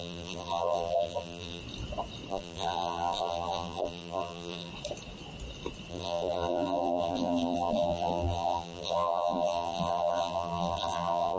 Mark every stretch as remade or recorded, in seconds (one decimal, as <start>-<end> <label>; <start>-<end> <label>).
0.0-1.6 remade; 1.6-2.3 recorded; 2.3-4.7 remade; 4.7-5.9 recorded; 5.9-11.4 remade